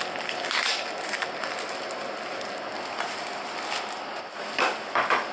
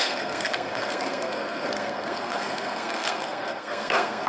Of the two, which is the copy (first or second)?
second